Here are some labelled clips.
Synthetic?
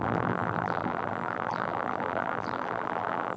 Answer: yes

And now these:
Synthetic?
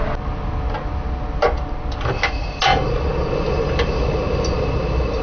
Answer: no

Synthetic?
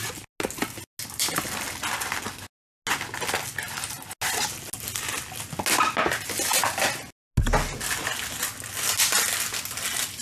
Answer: no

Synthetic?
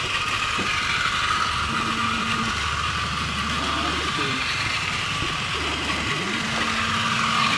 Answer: no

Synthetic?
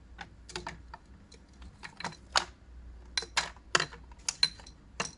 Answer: no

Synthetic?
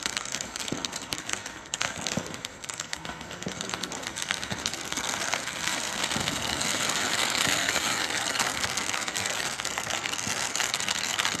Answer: yes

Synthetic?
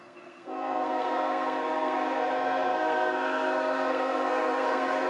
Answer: yes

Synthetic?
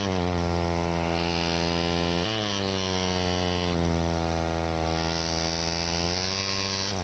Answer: no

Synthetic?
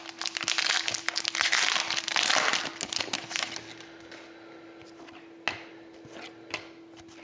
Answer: no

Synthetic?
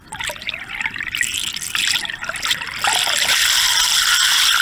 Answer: no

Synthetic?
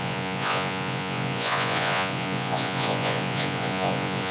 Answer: yes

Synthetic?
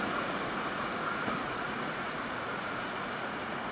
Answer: yes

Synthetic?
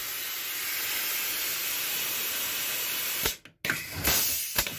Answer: no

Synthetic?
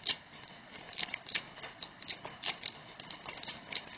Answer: yes